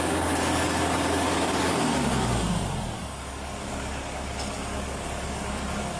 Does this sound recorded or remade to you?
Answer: remade